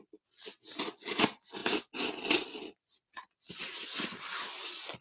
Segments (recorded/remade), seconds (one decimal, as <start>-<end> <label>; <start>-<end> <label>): 0.0-5.0 recorded